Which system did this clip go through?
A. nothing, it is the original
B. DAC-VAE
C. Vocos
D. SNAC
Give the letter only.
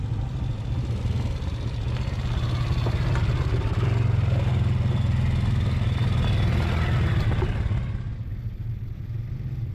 A